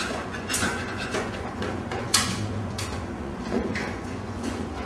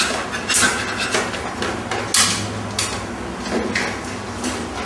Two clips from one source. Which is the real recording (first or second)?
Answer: second